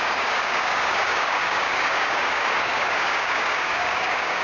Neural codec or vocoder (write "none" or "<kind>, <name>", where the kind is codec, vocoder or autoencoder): codec, DAC